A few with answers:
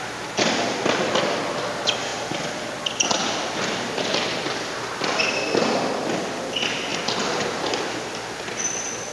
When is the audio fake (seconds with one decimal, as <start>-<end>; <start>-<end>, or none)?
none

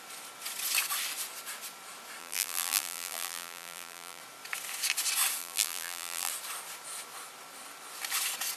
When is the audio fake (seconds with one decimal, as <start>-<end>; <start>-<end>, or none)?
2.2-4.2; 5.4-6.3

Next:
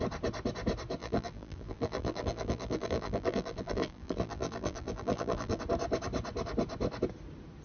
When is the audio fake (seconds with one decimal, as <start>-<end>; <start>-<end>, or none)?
1.0-5.6